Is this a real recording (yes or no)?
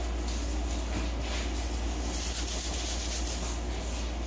yes